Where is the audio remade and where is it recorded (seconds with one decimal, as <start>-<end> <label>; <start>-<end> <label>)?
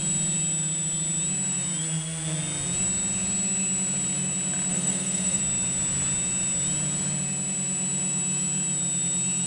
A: 0.0-4.7 recorded; 4.7-5.4 remade; 5.4-9.5 recorded